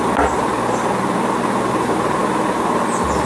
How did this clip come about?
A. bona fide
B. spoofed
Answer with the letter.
A